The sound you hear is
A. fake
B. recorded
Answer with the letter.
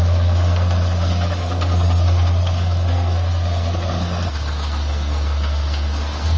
A